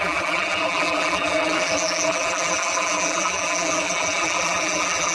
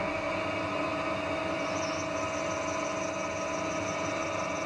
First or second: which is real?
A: second